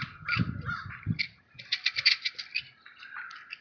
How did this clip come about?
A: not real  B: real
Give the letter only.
A